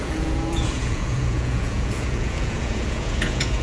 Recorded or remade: remade